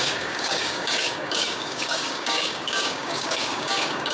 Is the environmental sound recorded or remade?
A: remade